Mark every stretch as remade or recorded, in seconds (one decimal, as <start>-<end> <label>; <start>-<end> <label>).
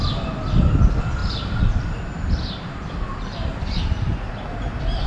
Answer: 0.0-1.2 recorded; 1.2-4.3 remade; 4.3-5.1 recorded